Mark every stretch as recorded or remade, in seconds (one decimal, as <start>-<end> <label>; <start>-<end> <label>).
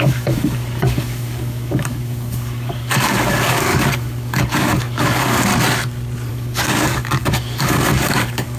0.0-5.5 remade; 5.5-6.3 recorded; 6.3-8.6 remade